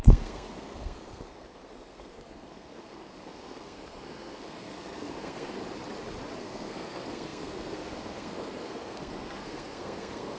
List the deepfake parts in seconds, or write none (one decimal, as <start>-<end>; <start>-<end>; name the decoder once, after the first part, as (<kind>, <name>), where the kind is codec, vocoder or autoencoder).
0.0-5.6 (codec, SNAC); 6.4-10.4